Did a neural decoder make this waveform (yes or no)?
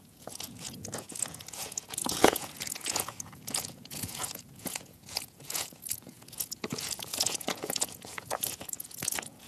yes